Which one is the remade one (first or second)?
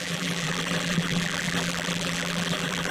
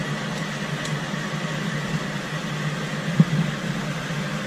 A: first